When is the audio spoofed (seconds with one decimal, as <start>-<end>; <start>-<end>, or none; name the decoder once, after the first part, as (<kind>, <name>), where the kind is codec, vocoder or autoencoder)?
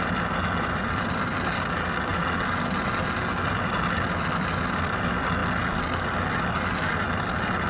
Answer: 0.0-2.1 (vocoder, BigVGAN v2); 3.5-5.4; 6.3-7.7